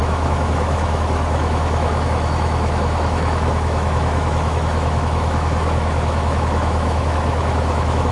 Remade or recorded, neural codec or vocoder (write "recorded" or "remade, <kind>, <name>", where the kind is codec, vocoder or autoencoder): remade, autoencoder, DAC-VAE